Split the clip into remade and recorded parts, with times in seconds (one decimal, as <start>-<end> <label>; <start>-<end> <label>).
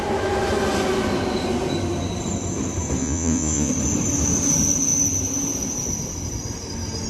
0.0-3.0 recorded; 3.0-3.7 remade; 3.7-7.1 recorded